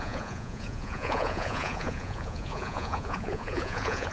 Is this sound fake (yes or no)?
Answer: yes